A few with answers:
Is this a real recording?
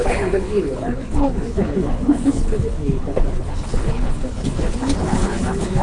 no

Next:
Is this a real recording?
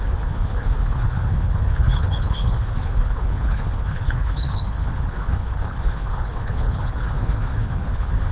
no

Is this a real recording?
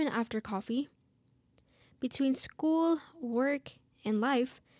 yes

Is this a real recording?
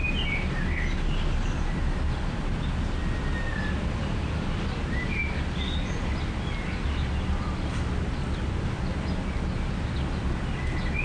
yes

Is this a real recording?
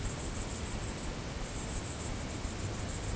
yes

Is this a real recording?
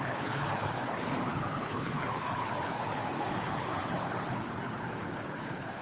no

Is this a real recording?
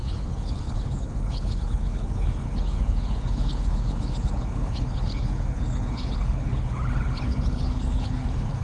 no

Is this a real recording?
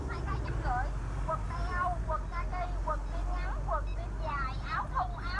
yes